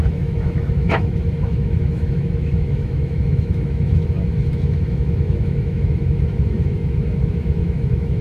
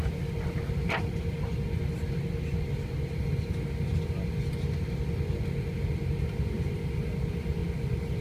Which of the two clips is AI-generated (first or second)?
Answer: first